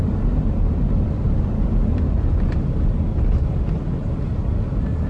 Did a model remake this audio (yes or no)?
no